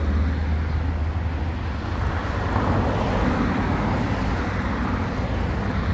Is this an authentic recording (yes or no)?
yes